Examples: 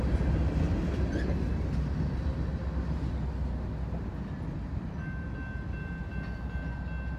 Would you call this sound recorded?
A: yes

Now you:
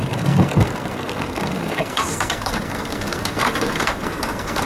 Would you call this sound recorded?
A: no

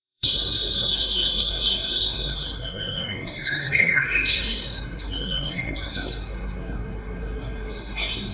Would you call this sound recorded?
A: no